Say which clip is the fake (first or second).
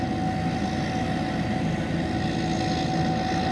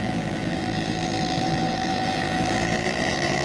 second